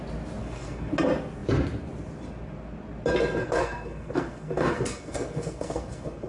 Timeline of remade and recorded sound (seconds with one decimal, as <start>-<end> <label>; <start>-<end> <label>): 0.0-0.4 recorded; 0.4-0.9 remade; 0.9-3.4 recorded; 3.4-6.3 remade

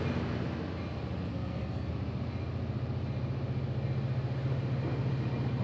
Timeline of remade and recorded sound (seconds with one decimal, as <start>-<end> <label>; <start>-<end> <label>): 0.0-1.3 recorded; 1.3-1.9 remade; 1.9-5.6 recorded